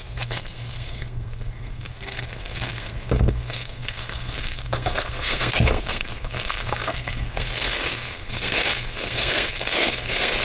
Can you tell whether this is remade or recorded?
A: remade